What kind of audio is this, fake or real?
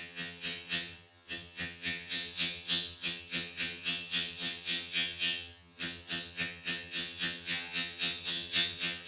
fake